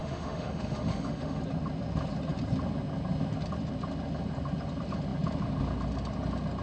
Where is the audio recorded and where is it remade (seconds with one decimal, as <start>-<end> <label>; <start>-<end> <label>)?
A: 0.0-1.4 remade; 1.4-6.6 recorded